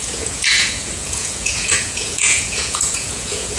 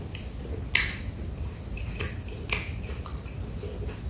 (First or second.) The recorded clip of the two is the second